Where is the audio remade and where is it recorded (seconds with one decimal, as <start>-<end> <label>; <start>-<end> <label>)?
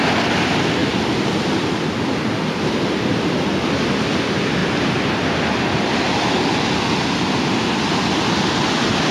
0.0-9.1 recorded